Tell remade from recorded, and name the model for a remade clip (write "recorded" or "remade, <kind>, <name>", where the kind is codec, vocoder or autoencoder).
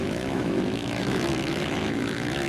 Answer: remade, autoencoder, DAC-VAE